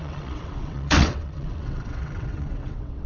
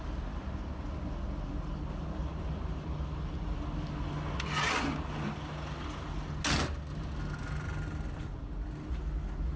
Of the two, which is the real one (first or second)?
second